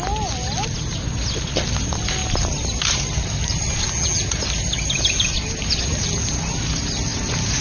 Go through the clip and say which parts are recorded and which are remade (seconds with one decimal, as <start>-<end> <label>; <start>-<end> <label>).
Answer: 0.0-7.6 recorded